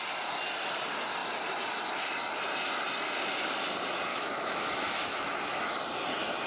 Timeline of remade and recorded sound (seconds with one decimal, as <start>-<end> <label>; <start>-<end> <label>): 0.0-4.1 recorded; 4.1-5.7 remade; 5.7-6.5 recorded